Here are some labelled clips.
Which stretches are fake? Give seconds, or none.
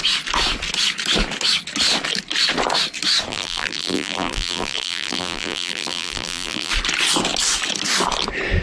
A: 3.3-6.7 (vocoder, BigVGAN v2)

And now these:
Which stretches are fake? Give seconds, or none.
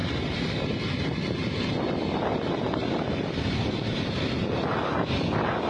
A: 0.0-5.7 (vocoder, BigVGAN v2)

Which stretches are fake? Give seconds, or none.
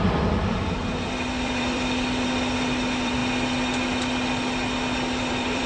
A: 0.0-3.2 (vocoder, BigVGAN v2); 5.3-5.7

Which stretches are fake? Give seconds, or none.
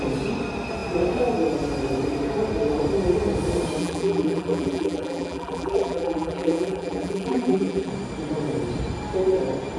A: 3.8-7.9 (vocoder, BigVGAN v2)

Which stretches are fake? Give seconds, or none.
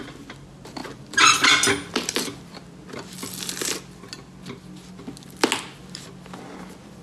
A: none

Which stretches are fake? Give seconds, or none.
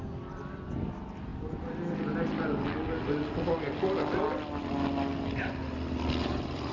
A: 6.2-6.7 (vocoder, BigVGAN v2)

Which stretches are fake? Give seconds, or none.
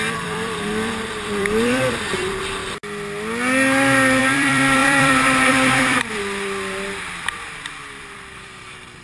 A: 0.0-2.6 (vocoder, BigVGAN v2); 4.2-9.0